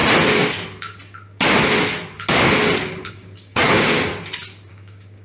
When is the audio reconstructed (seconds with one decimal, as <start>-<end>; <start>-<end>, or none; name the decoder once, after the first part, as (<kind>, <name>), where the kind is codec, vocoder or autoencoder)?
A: 3.1-4.1 (codec, DAC); 4.7-5.2